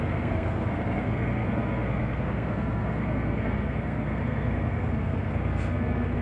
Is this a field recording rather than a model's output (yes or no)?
no